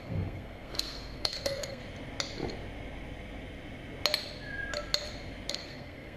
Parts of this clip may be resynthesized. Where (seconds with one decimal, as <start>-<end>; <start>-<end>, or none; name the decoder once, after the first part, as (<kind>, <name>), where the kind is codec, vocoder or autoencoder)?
0.0-1.8 (codec, SNAC); 5.5-6.2